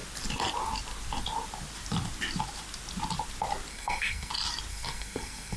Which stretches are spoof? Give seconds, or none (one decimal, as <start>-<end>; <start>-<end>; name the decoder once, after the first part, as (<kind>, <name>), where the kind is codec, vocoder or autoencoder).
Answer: 3.7-4.3 (codec, SNAC); 4.7-5.6